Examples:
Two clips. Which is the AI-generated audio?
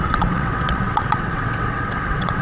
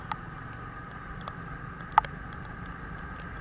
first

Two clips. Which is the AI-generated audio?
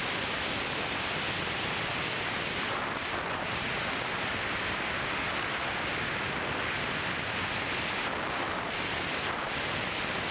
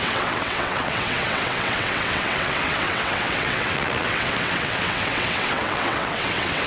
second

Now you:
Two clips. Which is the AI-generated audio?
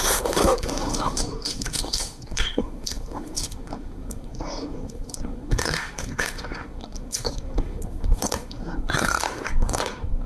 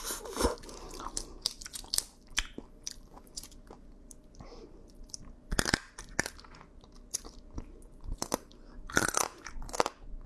first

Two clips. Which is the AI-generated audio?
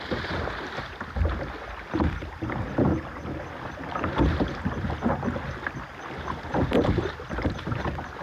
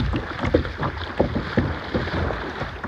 first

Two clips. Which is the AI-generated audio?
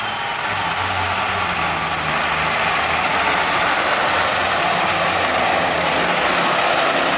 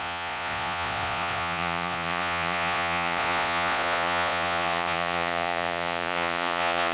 second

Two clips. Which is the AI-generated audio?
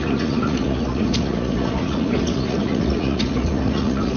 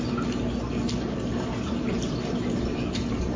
first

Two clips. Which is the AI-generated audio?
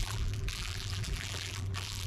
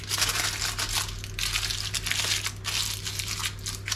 first